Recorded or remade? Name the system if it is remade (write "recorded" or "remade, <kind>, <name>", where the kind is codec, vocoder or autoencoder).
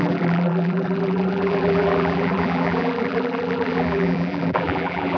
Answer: remade, vocoder, BigVGAN v2